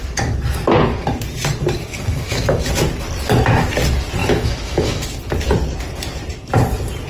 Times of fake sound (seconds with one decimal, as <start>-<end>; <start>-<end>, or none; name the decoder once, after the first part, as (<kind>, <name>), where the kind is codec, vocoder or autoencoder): 1.9-2.7 (autoencoder, DAC-VAE); 4.2-5.2